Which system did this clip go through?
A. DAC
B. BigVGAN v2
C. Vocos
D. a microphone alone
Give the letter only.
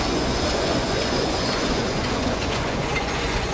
C